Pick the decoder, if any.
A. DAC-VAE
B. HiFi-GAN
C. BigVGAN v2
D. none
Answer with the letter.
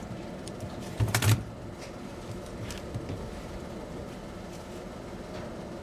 C